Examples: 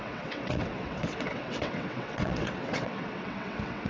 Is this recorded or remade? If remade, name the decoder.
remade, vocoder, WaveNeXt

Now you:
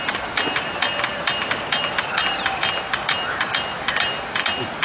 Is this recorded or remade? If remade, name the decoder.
recorded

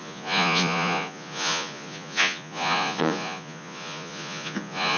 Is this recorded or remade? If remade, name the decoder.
remade, vocoder, Vocos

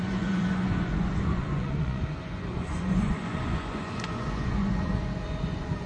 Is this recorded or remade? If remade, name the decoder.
remade, vocoder, Vocos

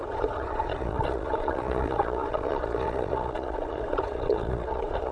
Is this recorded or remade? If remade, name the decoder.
remade, vocoder, Vocos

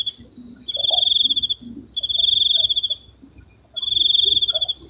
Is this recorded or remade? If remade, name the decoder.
recorded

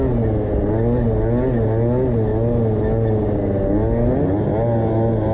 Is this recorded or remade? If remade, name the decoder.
recorded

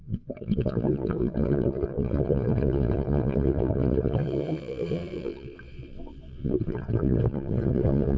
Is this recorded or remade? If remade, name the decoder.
remade, vocoder, WaveNeXt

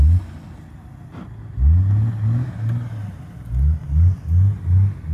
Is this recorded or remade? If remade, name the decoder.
recorded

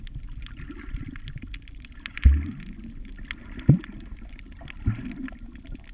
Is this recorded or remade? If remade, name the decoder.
recorded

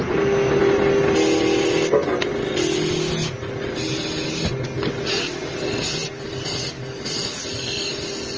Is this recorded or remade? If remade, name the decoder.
recorded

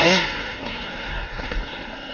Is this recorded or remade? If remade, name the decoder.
remade, codec, SNAC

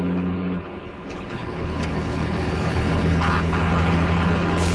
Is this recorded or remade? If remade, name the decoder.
remade, codec, HILCodec